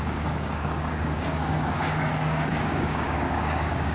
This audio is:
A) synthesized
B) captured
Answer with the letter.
A